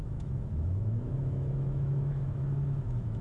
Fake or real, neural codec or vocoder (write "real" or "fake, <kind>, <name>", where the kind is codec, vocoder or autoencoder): fake, autoencoder, DAC-VAE